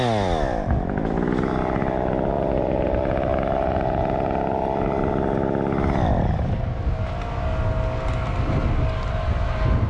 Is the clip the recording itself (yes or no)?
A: yes